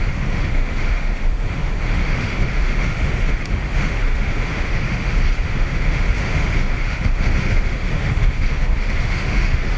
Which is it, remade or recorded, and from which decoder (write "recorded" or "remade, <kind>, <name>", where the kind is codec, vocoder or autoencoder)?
remade, autoencoder, DAC-VAE